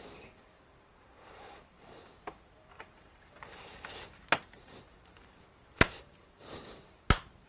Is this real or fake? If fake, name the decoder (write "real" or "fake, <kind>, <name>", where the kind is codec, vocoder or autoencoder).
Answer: fake, vocoder, BigVGAN v2